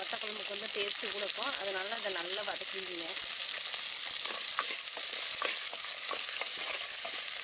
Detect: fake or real real